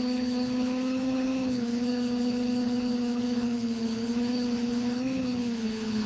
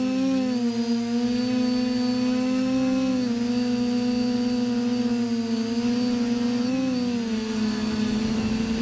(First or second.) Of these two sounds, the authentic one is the second